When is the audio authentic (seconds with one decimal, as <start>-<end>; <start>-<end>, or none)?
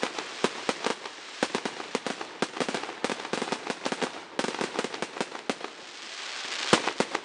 0.0-7.2